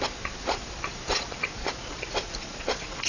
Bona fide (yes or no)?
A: no